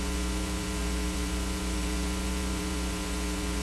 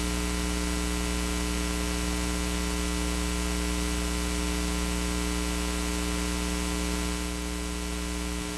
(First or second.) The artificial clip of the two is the first